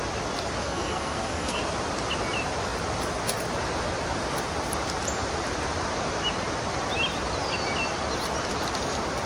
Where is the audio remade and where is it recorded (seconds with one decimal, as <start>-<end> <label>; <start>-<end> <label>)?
0.0-0.6 recorded; 0.6-1.6 remade; 1.6-9.3 recorded